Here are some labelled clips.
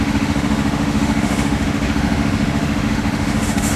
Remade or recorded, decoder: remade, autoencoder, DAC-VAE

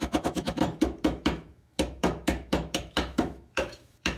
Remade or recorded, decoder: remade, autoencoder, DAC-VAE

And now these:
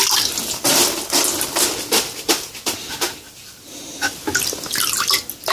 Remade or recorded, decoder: recorded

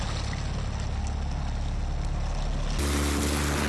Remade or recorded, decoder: recorded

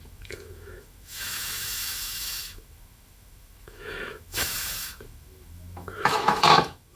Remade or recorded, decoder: remade, autoencoder, DAC-VAE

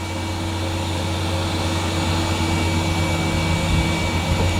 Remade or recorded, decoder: recorded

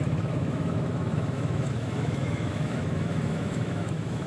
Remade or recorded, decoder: remade, autoencoder, DAC-VAE